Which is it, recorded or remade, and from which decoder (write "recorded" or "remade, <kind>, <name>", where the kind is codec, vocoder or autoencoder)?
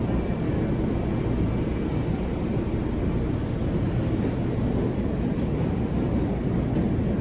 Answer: recorded